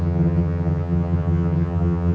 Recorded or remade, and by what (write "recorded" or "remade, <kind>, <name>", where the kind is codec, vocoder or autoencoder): remade, vocoder, HiFi-GAN